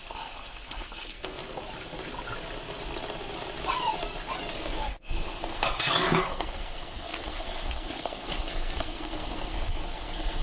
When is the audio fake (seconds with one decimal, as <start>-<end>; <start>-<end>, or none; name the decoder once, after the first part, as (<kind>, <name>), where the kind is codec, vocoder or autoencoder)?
0.0-1.4 (codec, SNAC); 4.5-10.4